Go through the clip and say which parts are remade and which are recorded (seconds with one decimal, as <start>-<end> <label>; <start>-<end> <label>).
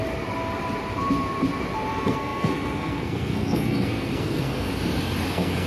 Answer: 0.0-1.9 recorded; 1.9-4.7 remade; 4.7-5.3 recorded; 5.3-5.7 remade